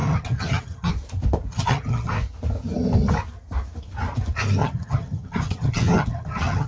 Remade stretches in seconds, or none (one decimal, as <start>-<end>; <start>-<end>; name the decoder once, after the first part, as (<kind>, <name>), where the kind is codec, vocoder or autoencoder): 0.0-0.9 (vocoder, HiFi-GAN); 1.5-2.1; 4.6-6.7